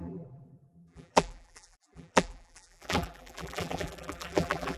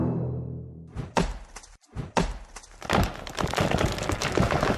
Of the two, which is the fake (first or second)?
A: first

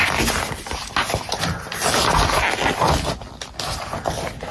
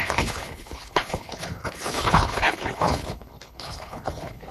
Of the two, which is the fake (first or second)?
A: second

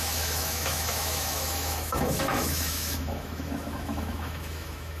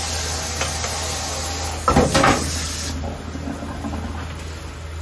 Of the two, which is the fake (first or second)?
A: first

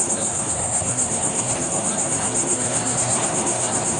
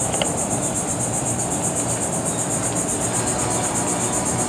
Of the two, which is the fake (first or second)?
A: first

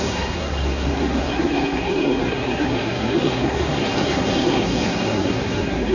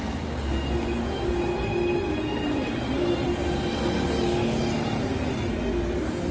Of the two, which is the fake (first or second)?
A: first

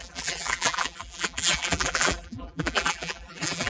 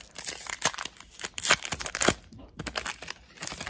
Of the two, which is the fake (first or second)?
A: first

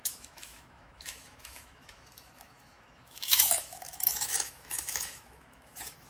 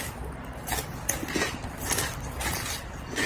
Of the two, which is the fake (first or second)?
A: first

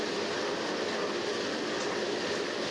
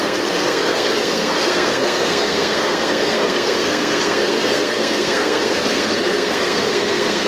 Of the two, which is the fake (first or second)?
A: second